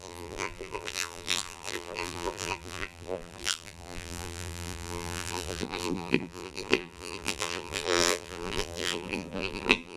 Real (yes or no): no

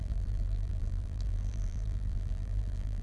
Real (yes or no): no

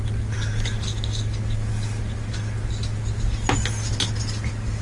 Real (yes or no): yes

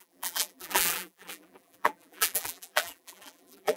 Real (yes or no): no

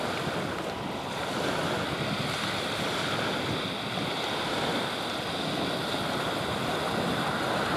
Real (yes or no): yes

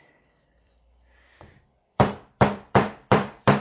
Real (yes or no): no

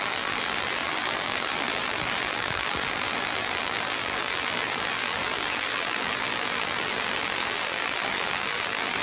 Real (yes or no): no